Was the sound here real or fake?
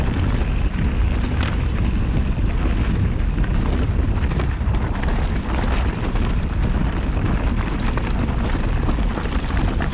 real